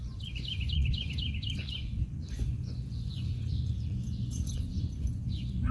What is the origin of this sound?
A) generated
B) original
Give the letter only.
A